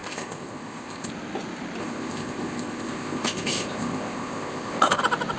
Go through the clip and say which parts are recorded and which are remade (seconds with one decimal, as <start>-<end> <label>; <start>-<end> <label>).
0.0-1.1 remade; 1.1-1.8 recorded; 1.8-5.0 remade; 5.0-5.4 recorded